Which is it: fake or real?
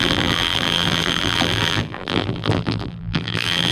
fake